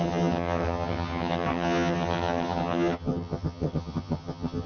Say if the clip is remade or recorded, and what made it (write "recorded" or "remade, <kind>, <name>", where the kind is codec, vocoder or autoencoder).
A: remade, vocoder, HiFi-GAN